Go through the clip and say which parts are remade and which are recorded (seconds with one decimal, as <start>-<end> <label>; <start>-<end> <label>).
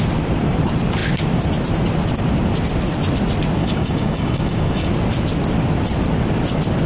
0.0-3.6 recorded; 3.6-4.9 remade; 4.9-6.9 recorded